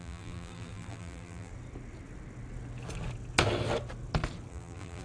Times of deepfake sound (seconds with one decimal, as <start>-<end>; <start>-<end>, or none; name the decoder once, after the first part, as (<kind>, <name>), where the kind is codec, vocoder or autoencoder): 0.0-1.5 (vocoder, BigVGAN v2); 4.5-5.0